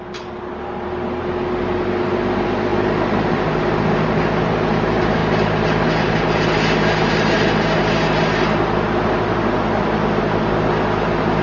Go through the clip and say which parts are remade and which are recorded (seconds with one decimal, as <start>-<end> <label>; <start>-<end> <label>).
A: 0.0-11.4 recorded